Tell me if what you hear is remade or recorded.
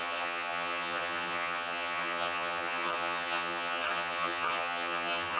remade